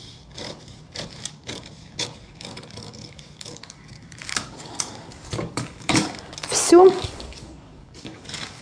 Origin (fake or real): fake